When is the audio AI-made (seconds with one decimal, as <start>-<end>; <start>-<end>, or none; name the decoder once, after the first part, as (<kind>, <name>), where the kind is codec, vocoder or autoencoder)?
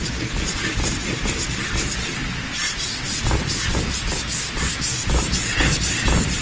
none